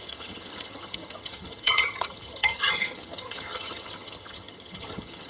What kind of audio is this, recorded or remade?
remade